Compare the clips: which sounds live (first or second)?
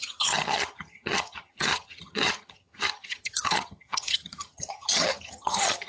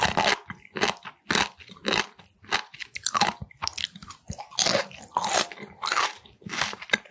second